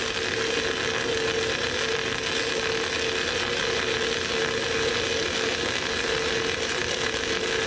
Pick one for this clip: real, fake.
real